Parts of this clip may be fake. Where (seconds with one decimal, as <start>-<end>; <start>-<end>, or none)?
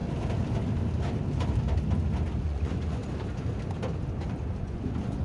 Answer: 2.4-3.0; 4.6-5.2